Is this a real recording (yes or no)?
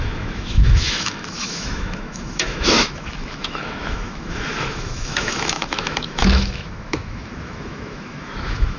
no